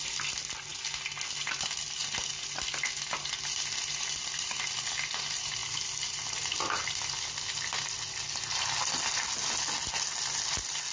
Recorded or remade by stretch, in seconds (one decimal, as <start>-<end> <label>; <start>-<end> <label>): 0.0-10.9 recorded